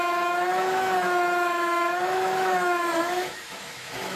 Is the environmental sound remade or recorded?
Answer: remade